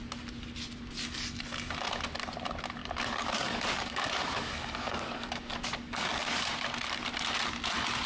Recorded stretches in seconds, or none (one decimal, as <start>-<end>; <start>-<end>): 0.0-2.8; 6.5-8.1